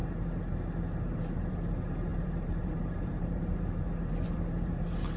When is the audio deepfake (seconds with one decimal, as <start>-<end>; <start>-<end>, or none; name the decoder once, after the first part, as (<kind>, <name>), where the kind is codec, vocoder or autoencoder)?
1.0-5.2 (vocoder, BigVGAN v2)

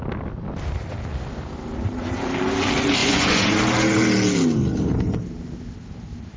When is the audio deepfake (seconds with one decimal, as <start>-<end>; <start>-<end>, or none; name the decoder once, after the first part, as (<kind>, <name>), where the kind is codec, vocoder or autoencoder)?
3.0-3.6 (vocoder, Vocos)

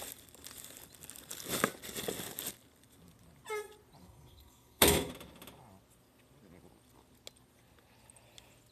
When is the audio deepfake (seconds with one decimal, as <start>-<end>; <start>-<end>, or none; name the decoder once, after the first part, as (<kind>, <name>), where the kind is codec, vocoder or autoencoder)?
4.0-5.1 (codec, SNAC)